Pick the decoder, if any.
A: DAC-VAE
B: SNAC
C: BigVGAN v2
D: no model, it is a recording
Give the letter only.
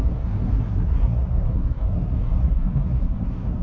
B